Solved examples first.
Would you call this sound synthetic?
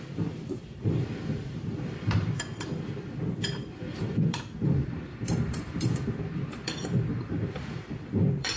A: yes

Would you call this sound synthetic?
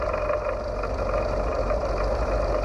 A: no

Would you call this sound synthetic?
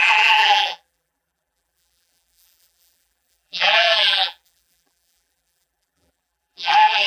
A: yes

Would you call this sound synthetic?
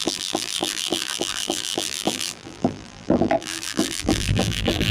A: yes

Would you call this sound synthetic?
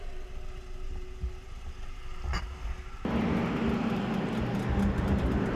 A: no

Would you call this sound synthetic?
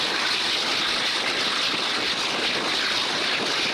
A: no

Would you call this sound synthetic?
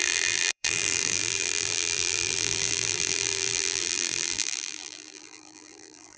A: yes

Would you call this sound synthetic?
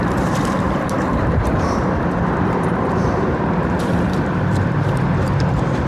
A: yes